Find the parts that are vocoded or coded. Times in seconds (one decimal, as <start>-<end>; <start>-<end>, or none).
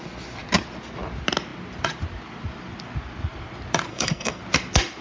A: 3.9-4.4